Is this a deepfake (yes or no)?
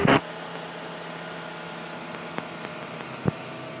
no